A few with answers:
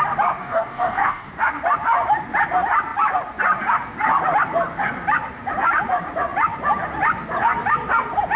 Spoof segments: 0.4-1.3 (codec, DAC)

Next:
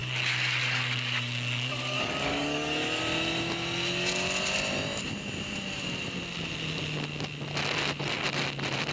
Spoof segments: 0.0-3.0 (codec, DAC)